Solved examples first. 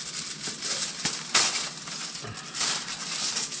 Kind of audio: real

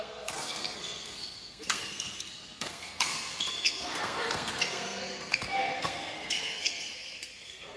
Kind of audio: fake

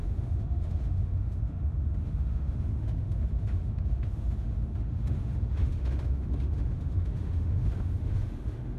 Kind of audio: fake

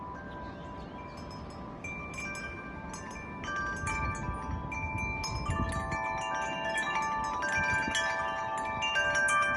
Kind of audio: real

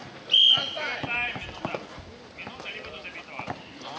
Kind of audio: real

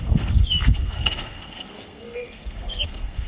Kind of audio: fake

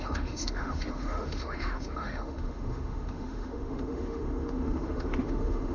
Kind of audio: fake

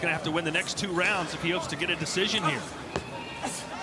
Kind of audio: real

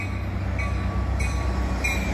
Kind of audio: real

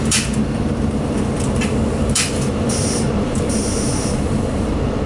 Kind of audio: fake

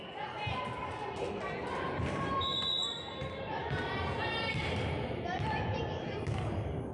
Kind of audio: real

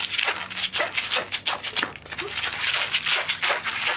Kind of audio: real